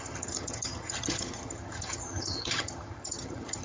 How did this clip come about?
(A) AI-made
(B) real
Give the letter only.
A